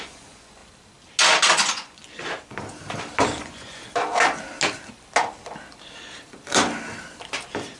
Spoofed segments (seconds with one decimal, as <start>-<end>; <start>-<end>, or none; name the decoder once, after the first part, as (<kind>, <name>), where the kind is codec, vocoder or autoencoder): 0.0-0.6 (vocoder, Vocos); 1.5-2.0; 3.4-3.8